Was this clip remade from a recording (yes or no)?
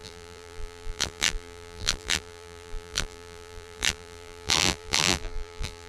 yes